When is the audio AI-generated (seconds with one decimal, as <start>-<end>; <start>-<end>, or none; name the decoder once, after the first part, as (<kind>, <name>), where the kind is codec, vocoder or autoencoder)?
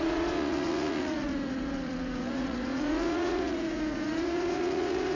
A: 0.0-5.2 (vocoder, Vocos)